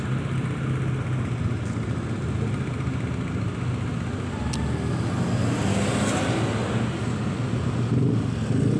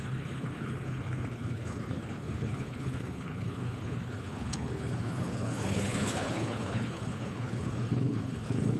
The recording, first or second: first